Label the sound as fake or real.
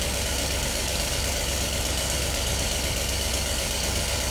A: fake